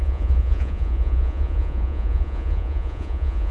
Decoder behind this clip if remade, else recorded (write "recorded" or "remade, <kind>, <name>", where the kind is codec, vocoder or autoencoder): remade, vocoder, Vocos